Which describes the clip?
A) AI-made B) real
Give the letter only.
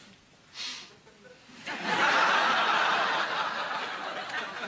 B